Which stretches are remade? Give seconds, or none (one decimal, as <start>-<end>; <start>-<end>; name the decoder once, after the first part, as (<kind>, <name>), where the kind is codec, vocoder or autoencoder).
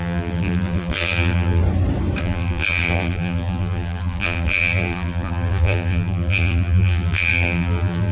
0.0-1.6 (vocoder, BigVGAN v2); 2.2-8.1